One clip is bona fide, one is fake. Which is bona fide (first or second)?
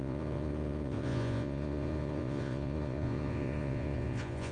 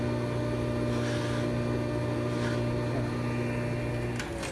second